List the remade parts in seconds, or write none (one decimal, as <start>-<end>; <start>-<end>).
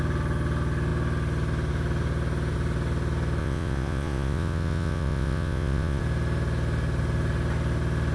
3.4-6.0